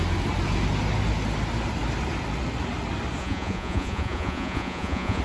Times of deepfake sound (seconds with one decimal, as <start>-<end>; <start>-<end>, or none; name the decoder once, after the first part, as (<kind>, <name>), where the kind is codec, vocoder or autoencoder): 3.2-5.2 (vocoder, Vocos)